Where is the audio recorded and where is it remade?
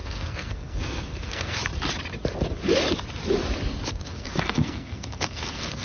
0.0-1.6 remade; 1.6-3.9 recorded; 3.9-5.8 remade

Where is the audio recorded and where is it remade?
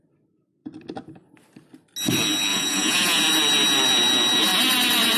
0.0-2.5 recorded; 2.5-3.2 remade; 3.2-5.2 recorded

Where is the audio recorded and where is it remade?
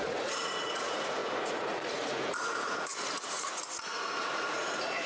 0.0-5.1 remade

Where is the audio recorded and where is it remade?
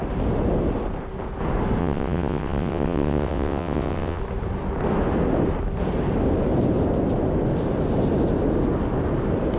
0.0-1.8 recorded; 1.8-4.2 remade; 4.2-9.6 recorded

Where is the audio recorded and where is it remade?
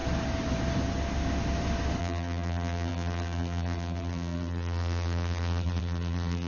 0.0-2.0 recorded; 2.0-6.5 remade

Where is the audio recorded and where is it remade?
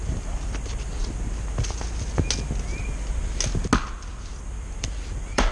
0.0-1.0 remade; 1.0-4.3 recorded; 4.3-5.5 remade